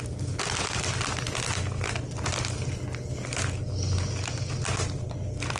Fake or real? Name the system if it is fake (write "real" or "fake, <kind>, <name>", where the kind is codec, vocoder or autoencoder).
real